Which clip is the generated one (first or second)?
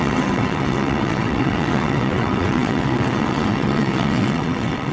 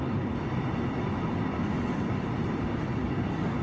first